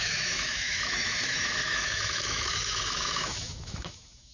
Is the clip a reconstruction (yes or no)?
yes